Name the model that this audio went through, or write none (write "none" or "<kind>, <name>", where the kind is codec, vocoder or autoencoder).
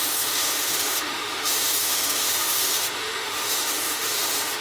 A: autoencoder, DAC-VAE